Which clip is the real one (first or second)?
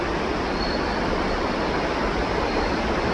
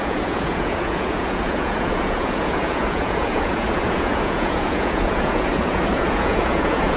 first